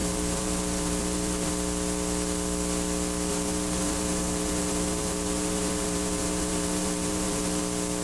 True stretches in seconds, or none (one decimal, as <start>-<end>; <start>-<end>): 1.5-3.3; 7.6-8.0